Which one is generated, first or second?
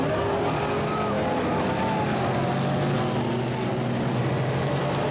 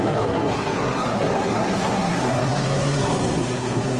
second